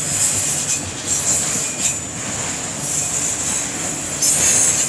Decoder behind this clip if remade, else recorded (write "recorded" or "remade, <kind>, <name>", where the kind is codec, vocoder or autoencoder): recorded